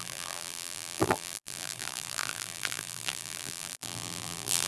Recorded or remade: remade